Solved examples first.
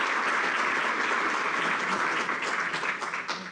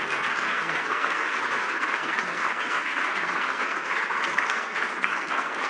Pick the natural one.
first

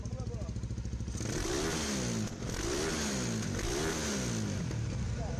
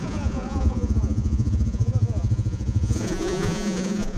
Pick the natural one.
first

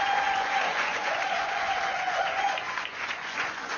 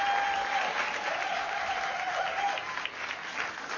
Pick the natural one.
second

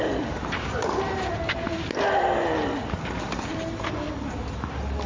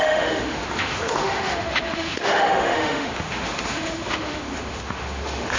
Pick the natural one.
first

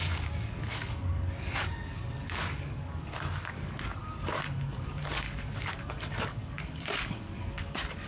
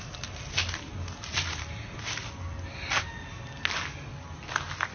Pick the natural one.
second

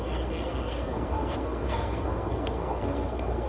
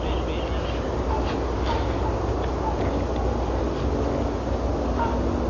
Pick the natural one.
second